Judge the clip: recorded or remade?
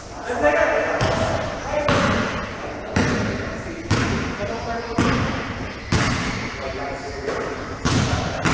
recorded